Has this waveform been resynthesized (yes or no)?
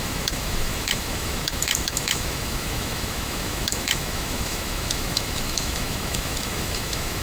yes